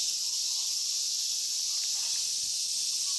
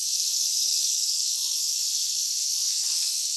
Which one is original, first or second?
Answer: first